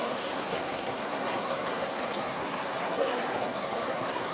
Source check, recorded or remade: remade